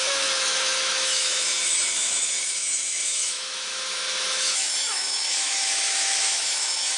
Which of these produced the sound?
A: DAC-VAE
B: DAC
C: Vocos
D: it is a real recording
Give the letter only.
A